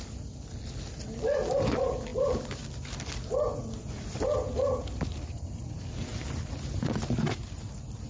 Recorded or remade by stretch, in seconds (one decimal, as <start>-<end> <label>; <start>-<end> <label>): 0.0-8.1 recorded